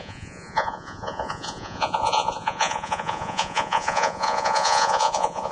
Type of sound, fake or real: fake